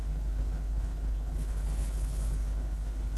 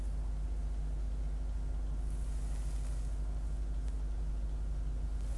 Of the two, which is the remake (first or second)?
first